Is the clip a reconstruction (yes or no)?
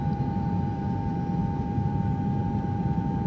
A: yes